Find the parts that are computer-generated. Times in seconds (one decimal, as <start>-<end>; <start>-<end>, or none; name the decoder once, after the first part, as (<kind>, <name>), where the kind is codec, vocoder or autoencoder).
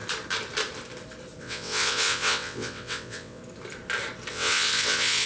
1.4-3.4 (vocoder, WaveNeXt); 4.3-5.3